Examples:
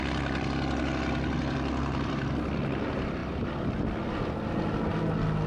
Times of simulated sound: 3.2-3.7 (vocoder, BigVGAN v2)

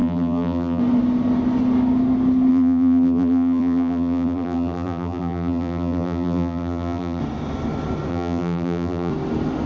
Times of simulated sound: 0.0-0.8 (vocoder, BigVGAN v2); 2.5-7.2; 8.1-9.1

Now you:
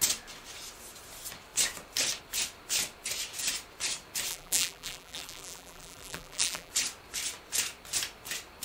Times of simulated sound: 4.3-6.7 (vocoder, BigVGAN v2)